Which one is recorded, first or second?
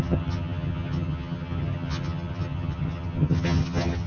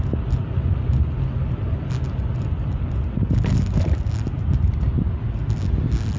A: second